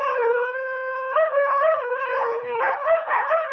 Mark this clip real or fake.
fake